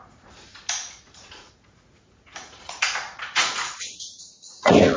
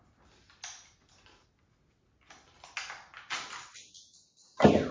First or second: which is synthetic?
first